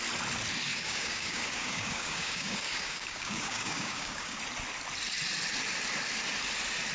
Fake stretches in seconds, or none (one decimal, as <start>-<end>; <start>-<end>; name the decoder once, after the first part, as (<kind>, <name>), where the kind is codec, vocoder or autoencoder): 0.7-4.4 (codec, DAC)

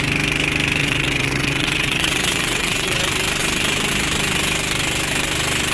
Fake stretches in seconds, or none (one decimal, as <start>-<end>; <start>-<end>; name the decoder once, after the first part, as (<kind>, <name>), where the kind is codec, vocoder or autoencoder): 0.8-3.0 (vocoder, WaveNeXt)